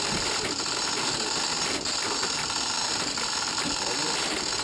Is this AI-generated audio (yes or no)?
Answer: no